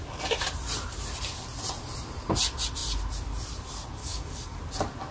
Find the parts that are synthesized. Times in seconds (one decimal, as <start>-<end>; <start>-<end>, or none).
4.0-4.6